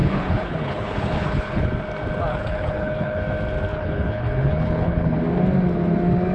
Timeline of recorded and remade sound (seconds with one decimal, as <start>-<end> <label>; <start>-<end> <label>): 0.0-1.7 remade; 1.7-2.3 recorded; 2.3-3.2 remade; 3.2-3.7 recorded; 3.7-5.2 remade; 5.2-6.3 recorded